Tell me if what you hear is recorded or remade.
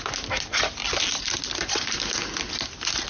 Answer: recorded